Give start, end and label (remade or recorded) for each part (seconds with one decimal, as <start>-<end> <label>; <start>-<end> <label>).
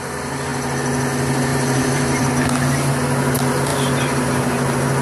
0.0-1.5 recorded; 1.5-2.3 remade; 2.3-5.0 recorded